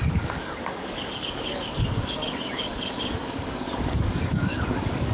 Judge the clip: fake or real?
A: fake